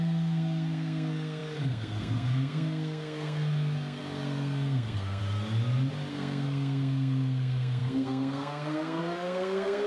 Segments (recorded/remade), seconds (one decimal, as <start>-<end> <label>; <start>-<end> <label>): 0.0-5.2 remade; 5.2-6.1 recorded; 6.1-9.9 remade